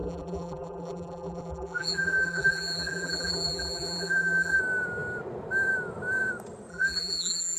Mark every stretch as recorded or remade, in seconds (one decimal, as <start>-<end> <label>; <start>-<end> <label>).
0.0-4.6 remade; 4.6-6.7 recorded; 6.7-7.6 remade